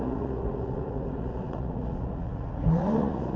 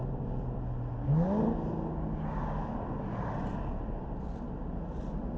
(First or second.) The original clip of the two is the second